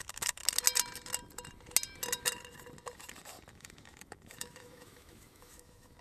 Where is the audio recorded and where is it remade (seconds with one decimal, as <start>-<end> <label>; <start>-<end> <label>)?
0.0-0.4 remade; 0.4-3.5 recorded; 3.5-6.0 remade